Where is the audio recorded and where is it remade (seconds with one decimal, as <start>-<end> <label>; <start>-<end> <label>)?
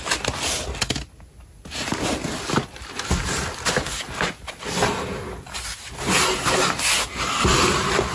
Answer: 0.0-8.1 recorded